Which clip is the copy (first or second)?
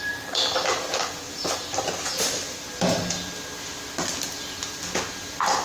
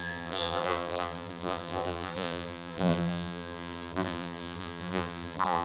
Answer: second